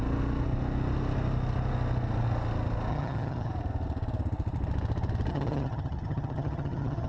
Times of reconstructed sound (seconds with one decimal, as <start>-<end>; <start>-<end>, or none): 2.9-3.5; 5.3-7.1